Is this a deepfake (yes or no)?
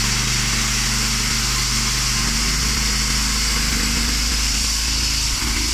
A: no